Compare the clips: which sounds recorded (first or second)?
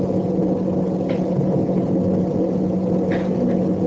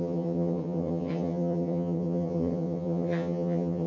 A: first